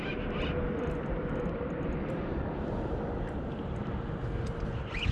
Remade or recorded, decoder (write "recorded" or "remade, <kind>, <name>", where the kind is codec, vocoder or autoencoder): recorded